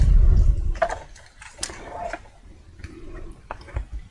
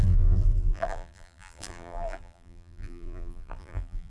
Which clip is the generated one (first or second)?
second